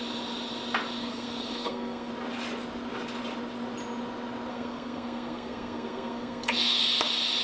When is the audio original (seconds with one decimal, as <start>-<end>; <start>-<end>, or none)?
0.0-1.0; 2.1-4.5; 6.8-7.4